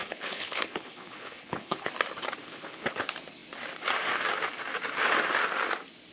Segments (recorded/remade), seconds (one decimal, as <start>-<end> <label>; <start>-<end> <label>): 0.0-1.9 remade; 1.9-2.4 recorded; 2.4-3.0 remade; 3.0-6.1 recorded